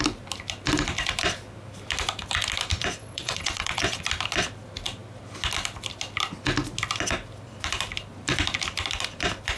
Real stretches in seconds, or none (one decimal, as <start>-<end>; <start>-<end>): 0.0-3.0; 4.0-9.6